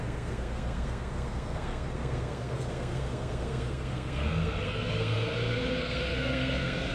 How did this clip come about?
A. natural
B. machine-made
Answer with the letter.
B